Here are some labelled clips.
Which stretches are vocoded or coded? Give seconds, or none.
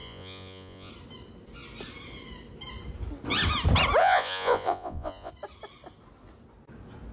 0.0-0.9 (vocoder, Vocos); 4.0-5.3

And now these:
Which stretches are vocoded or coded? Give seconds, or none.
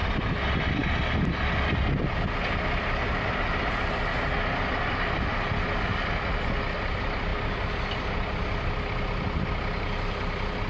none